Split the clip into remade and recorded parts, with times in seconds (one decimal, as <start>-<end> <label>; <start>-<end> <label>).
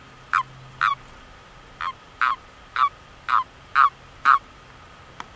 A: 0.0-5.4 recorded